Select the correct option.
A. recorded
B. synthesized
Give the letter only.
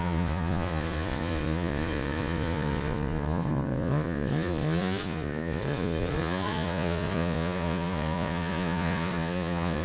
B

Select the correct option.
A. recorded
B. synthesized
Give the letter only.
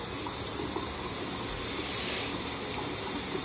A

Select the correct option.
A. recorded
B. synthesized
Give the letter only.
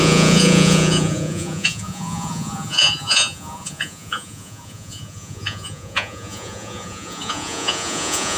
B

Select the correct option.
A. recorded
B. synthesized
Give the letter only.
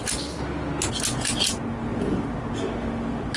A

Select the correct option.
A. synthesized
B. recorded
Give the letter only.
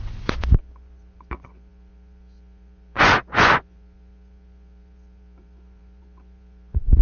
A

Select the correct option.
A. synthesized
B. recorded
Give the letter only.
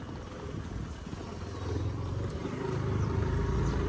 B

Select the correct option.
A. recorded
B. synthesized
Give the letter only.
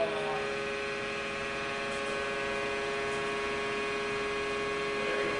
A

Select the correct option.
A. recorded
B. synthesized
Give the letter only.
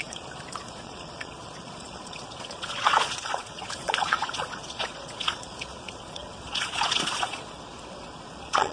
B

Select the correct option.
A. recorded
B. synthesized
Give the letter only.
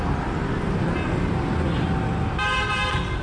A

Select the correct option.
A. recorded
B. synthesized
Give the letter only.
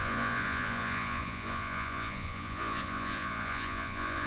B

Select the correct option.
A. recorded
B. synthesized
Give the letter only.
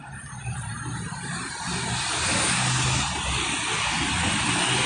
A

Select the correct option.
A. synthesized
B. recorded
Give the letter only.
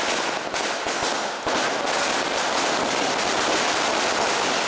B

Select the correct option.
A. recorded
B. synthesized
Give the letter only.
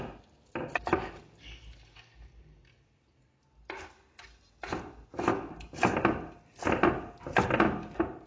A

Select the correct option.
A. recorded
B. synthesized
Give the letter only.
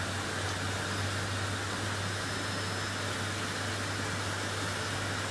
A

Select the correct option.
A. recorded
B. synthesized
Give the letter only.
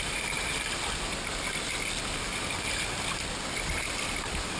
A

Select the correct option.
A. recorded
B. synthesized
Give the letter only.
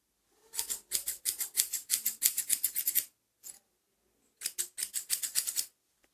A